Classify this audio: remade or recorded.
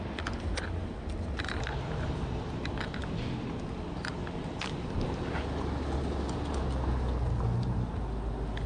recorded